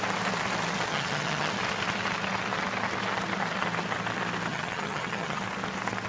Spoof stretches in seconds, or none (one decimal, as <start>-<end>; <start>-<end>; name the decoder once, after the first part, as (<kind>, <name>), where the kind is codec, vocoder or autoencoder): 0.9-1.5 (vocoder, HiFi-GAN); 4.5-5.4